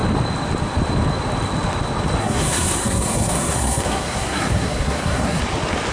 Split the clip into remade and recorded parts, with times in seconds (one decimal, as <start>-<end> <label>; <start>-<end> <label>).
0.0-2.2 recorded; 2.2-5.4 remade; 5.4-5.9 recorded